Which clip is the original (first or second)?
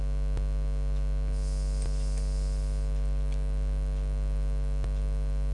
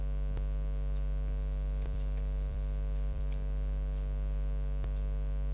first